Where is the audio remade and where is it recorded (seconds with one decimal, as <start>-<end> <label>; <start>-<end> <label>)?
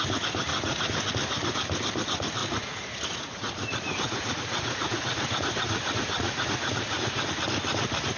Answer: 0.0-0.5 recorded; 0.5-1.1 remade; 1.1-2.4 recorded; 2.4-7.3 remade; 7.3-8.2 recorded